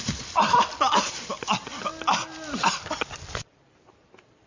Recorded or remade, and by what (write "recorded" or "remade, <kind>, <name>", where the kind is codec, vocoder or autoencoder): remade, vocoder, BigVGAN v2